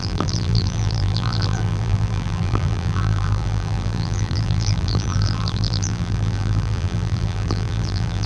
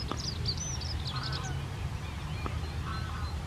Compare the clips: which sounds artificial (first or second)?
first